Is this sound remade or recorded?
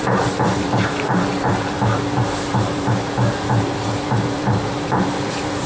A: remade